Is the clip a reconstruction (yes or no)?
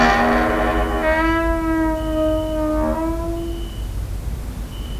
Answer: no